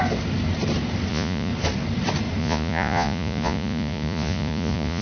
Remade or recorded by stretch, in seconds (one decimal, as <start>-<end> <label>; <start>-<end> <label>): 0.0-1.1 recorded; 1.1-1.5 remade; 1.5-2.4 recorded; 2.4-5.0 remade